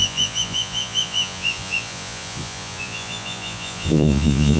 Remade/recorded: remade